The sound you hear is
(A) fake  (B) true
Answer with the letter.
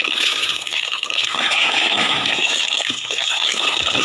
A